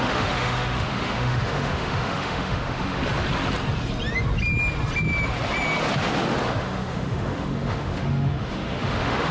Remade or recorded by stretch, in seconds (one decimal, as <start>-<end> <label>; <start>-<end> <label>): 0.0-3.0 remade; 3.0-6.6 recorded; 6.6-9.3 remade